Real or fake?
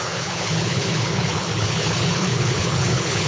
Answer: fake